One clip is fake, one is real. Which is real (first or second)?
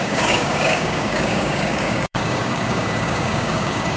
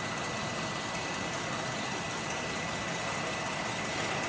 second